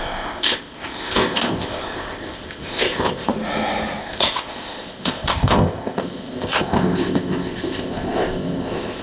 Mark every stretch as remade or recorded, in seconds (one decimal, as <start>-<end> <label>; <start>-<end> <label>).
0.0-3.3 remade; 3.3-4.0 recorded; 4.0-9.0 remade